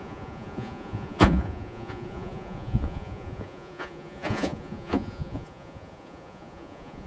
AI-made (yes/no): yes